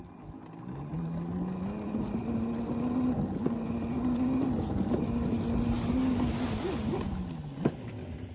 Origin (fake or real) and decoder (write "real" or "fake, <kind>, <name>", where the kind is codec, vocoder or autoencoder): real